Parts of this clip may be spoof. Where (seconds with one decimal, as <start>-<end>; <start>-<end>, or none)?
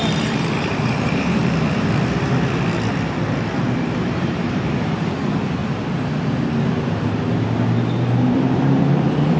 0.0-1.4; 4.0-5.6; 8.3-9.4